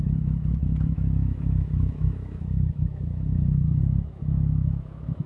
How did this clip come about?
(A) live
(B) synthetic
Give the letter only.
B